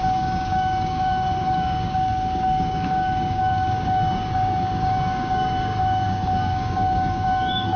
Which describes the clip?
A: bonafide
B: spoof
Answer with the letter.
B